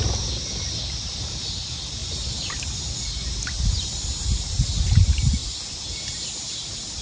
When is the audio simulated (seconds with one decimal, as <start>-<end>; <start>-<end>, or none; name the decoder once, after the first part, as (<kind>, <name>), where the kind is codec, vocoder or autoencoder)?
none